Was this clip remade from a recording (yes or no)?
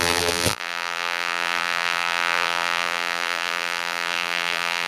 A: yes